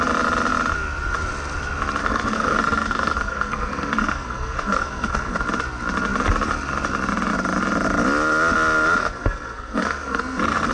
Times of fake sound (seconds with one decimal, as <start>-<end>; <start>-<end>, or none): 2.0-5.4; 9.0-10.7